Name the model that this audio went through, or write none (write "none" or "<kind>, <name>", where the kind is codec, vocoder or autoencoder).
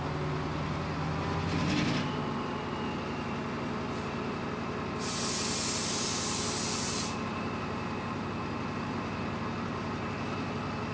none